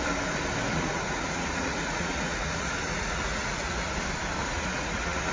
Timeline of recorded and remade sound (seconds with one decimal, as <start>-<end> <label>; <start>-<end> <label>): 0.0-0.7 recorded; 0.7-3.9 remade; 3.9-4.4 recorded; 4.4-5.3 remade

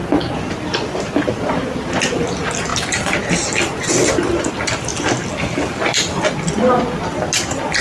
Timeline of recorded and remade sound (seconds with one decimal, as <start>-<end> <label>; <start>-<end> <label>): 0.0-7.8 recorded

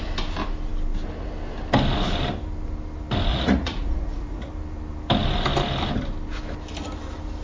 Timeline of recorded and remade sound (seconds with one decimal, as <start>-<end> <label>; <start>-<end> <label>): 0.0-3.3 recorded; 3.3-4.5 remade; 4.5-7.4 recorded